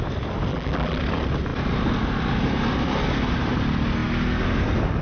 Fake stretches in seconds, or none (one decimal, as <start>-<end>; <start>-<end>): 0.5-1.0

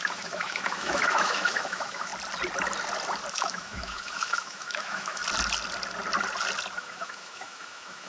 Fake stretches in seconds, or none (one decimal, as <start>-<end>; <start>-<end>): 0.0-2.1; 3.3-5.2; 6.8-8.1

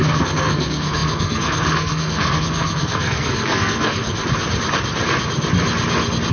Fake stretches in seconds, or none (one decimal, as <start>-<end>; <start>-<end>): 0.0-4.2

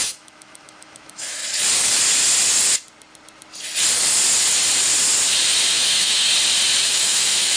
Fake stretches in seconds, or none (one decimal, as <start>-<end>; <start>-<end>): 0.0-1.4; 5.7-6.3; 6.8-7.6

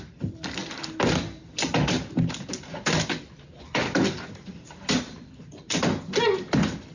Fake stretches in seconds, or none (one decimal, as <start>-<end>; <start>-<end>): none